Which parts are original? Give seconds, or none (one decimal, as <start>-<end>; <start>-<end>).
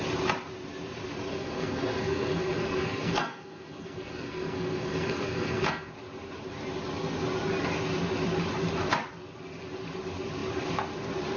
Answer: 0.0-1.3; 5.9-11.4